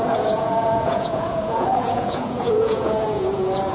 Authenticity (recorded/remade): remade